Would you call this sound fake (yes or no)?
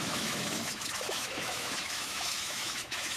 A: yes